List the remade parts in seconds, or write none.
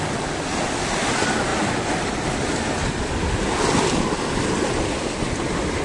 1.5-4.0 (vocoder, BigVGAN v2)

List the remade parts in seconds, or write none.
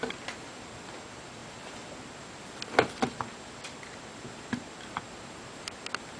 none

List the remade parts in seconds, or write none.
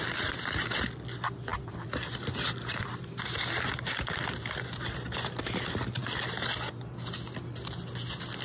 1.5-4.6 (vocoder, BigVGAN v2)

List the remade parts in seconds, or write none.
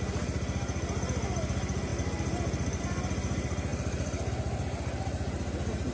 none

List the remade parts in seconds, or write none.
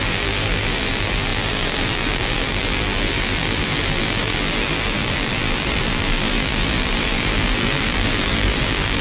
0.0-9.0 (vocoder, BigVGAN v2)